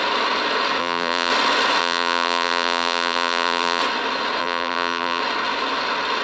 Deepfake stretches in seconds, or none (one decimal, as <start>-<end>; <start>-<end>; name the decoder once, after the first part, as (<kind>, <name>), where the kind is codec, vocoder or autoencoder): 0.8-1.3 (vocoder, BigVGAN v2); 1.8-3.8; 4.4-5.2